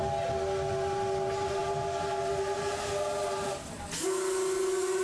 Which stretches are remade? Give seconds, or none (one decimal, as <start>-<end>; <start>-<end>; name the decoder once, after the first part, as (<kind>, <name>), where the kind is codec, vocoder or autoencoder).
none